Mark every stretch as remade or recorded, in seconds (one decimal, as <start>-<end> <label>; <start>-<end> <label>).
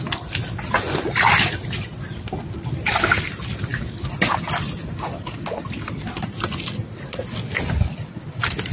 0.0-8.7 recorded